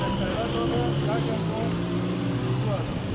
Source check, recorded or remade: recorded